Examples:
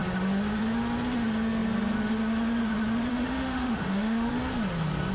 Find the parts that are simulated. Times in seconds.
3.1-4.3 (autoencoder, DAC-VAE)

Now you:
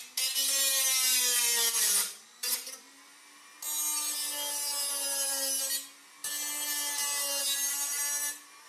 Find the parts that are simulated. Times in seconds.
none

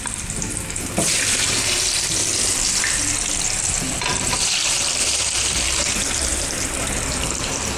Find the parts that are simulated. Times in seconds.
0.0-2.2 (vocoder, BigVGAN v2); 3.7-7.8

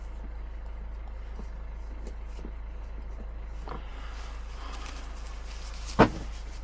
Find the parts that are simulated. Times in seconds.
none